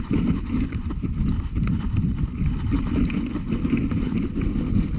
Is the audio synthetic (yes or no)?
no